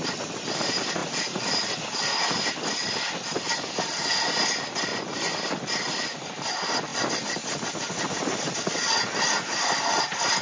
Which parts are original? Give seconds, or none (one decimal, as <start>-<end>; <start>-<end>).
0.0-4.9; 5.4-10.4